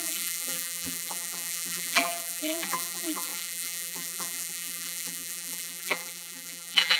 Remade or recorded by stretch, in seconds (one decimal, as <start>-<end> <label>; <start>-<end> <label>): 0.0-7.0 remade